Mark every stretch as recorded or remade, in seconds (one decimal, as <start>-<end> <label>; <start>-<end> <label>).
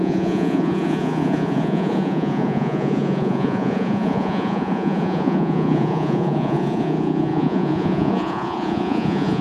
0.0-9.4 remade